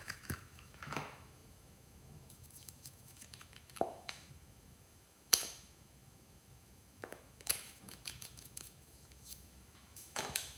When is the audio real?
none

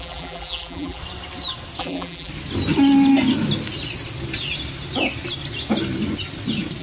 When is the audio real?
1.0-1.8; 2.3-6.8